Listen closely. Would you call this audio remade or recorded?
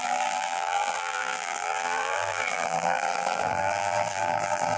remade